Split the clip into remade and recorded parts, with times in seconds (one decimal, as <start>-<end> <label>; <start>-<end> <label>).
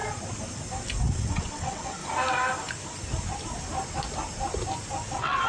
0.0-1.1 recorded; 1.1-2.0 remade; 2.0-5.1 recorded; 5.1-5.5 remade